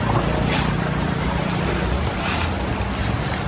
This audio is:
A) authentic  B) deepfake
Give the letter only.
A